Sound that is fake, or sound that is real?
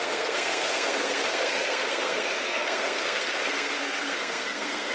fake